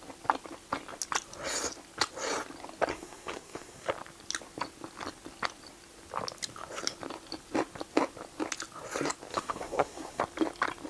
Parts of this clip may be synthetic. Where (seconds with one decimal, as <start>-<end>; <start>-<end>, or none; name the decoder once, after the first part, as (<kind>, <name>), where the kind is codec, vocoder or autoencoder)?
2.9-3.9 (codec, SNAC); 9.3-10.2